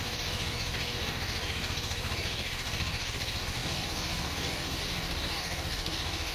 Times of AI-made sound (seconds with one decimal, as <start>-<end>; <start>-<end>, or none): 0.0-6.3